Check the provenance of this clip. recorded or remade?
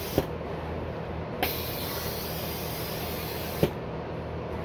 recorded